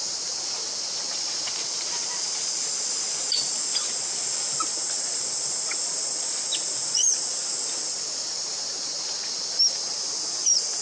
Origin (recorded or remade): recorded